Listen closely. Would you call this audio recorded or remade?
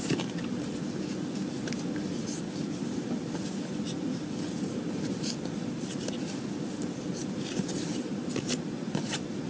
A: recorded